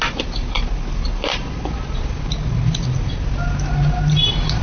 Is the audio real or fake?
real